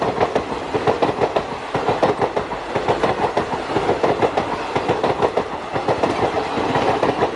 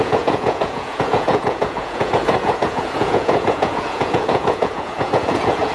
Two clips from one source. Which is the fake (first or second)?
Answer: second